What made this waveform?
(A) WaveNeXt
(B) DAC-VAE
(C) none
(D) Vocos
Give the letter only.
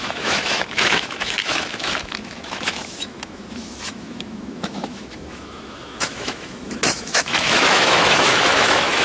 B